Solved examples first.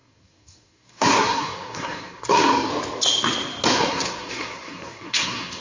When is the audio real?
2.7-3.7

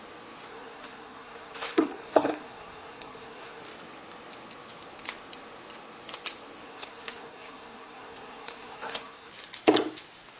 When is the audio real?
0.0-0.5; 3.6-6.6; 9.3-10.4

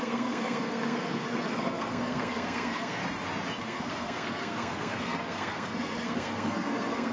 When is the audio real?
3.0-3.6

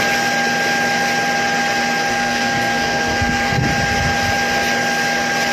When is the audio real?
0.0-2.1; 3.6-5.5

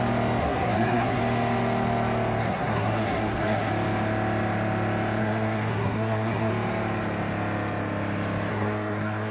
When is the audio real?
0.0-0.4; 1.2-2.4; 3.7-5.2; 6.5-8.5

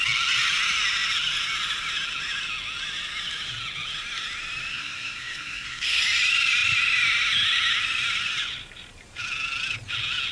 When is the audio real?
0.0-4.7; 6.0-10.3

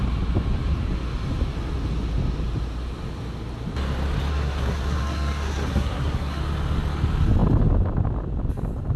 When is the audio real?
0.0-4.3; 6.4-9.0